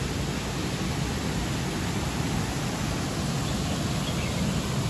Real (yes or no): yes